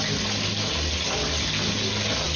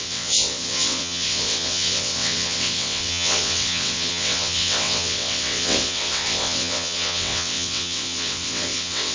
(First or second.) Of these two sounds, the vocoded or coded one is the second